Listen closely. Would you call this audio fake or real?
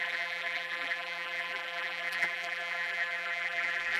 fake